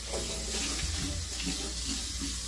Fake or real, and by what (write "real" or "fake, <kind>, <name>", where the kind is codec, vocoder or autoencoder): real